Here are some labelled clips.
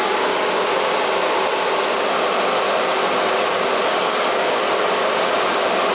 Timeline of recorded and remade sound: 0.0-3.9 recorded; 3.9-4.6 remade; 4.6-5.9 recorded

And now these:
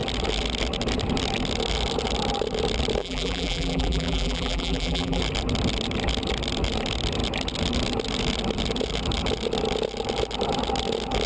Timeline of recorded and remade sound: 0.0-3.0 recorded; 3.0-5.2 remade; 5.2-11.3 recorded

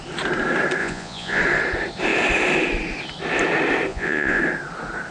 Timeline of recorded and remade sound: 0.0-0.8 recorded; 0.8-1.4 remade; 1.4-3.9 recorded; 3.9-4.4 remade; 4.4-5.1 recorded

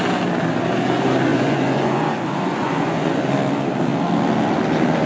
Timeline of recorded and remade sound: 0.0-1.3 recorded; 1.3-3.2 remade; 3.2-5.1 recorded